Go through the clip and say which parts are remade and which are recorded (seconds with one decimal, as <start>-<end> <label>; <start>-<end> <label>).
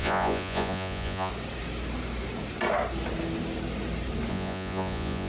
0.0-1.3 remade; 1.3-4.3 recorded; 4.3-5.3 remade